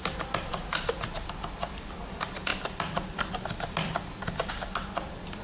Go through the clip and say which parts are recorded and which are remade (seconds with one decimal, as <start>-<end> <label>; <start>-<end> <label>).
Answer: 0.0-5.4 recorded